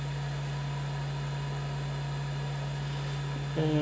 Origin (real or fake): real